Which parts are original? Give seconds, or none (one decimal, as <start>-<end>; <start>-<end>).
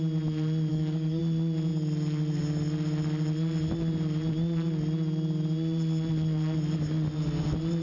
0.0-0.7; 1.2-7.8